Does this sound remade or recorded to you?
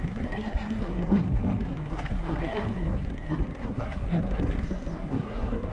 remade